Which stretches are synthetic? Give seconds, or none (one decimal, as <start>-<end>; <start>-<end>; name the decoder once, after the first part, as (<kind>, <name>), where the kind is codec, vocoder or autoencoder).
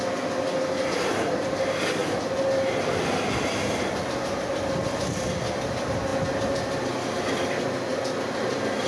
none